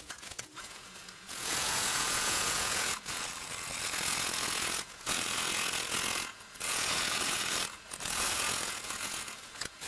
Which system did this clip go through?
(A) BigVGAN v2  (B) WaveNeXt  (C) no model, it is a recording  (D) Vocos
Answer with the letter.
D